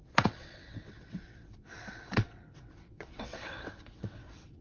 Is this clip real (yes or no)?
no